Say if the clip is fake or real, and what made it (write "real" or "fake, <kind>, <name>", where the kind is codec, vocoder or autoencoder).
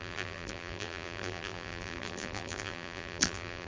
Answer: fake, vocoder, BigVGAN v2